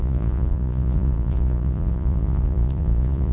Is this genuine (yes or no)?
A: no